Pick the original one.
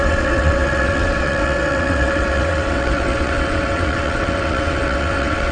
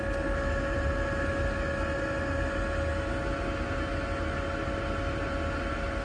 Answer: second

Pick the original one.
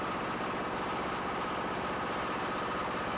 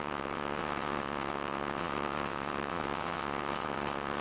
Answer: first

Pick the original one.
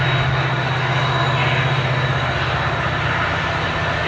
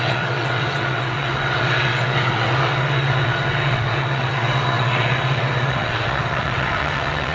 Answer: first